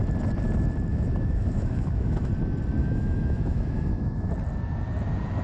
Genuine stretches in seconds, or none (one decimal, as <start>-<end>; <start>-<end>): 0.0-0.9; 2.3-2.8; 4.3-5.4